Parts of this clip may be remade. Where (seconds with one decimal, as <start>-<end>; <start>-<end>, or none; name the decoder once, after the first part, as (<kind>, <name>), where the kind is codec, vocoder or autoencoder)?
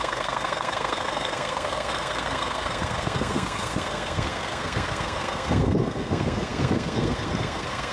0.0-7.9 (codec, SNAC)